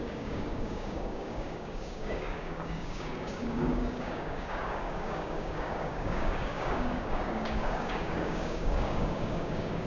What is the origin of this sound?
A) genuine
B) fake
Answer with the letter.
B